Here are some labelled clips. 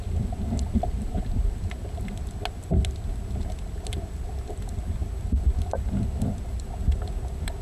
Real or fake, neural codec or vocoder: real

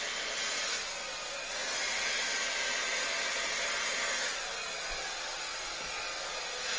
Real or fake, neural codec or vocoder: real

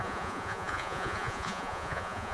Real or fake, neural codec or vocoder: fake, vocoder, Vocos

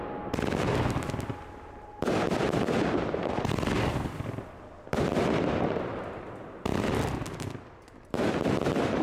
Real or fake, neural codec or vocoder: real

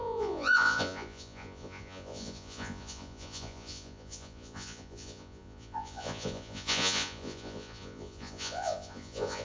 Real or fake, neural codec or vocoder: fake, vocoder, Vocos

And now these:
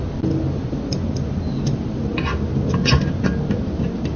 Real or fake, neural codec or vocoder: real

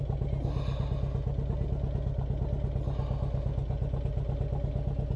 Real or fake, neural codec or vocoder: real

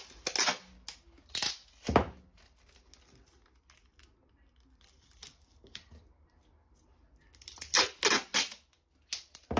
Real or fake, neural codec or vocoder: real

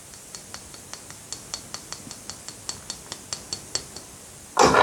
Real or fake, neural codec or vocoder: real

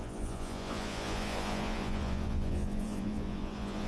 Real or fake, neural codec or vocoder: fake, vocoder, Vocos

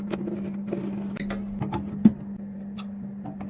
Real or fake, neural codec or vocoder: real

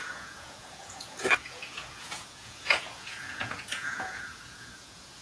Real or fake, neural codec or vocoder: fake, vocoder, Vocos